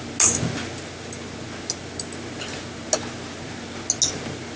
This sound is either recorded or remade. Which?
recorded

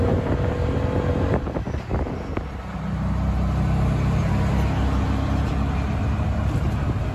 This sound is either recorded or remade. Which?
recorded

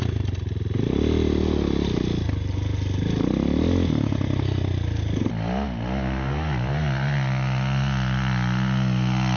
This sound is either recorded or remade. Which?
recorded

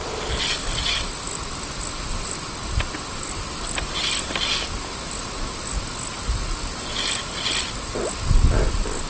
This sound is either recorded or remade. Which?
recorded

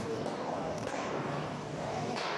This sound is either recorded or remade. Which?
remade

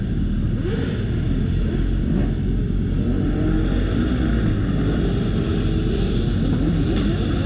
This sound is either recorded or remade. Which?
recorded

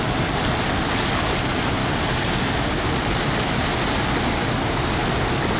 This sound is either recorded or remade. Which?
recorded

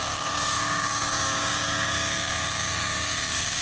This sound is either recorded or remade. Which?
remade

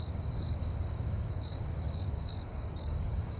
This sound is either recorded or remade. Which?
remade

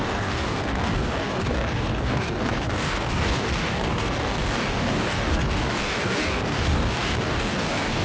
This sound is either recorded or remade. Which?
remade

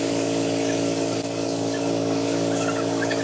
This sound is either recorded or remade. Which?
remade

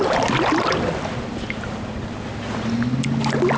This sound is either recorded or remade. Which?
recorded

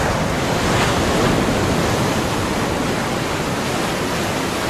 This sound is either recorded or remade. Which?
recorded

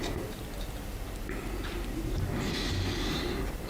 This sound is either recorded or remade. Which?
recorded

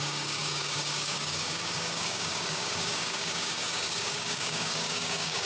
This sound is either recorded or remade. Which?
remade